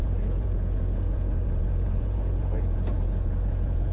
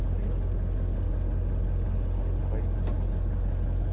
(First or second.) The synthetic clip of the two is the first